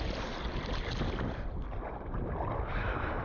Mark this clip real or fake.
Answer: real